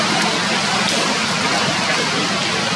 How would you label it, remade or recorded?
recorded